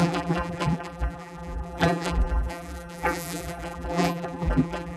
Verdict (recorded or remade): remade